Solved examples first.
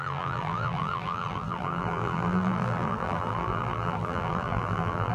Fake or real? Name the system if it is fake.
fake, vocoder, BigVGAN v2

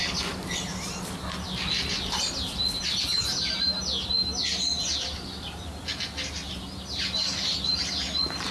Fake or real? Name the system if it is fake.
real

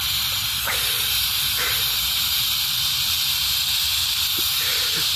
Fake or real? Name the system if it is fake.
fake, vocoder, BigVGAN v2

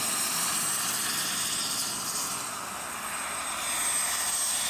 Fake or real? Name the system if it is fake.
real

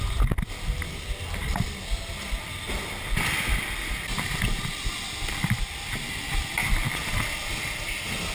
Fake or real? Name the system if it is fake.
real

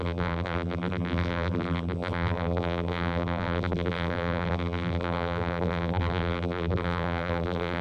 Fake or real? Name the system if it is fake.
fake, vocoder, BigVGAN v2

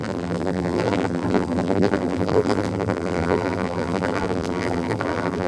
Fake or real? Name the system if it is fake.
fake, vocoder, BigVGAN v2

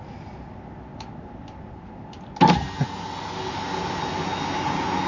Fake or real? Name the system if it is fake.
real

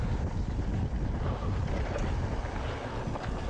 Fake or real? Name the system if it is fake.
real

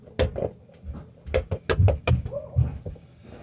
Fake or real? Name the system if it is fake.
real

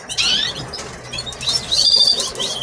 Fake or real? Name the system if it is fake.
real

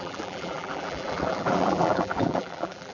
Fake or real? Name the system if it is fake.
fake, vocoder, BigVGAN v2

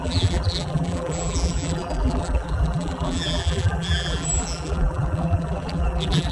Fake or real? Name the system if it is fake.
fake, vocoder, BigVGAN v2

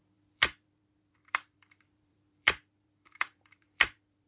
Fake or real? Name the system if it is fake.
fake, vocoder, BigVGAN v2